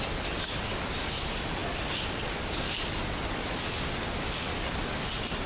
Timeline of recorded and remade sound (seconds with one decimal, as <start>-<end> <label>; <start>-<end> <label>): 0.0-5.5 recorded

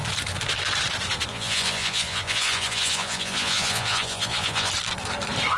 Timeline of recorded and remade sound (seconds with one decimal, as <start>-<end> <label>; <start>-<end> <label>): 0.0-1.3 recorded; 1.3-4.7 remade; 4.7-5.6 recorded

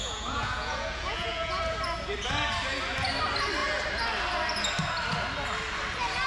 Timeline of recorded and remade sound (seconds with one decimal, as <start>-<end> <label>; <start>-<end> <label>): 0.0-1.6 remade; 1.6-6.3 recorded